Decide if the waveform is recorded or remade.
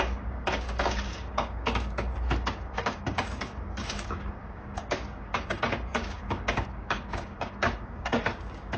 remade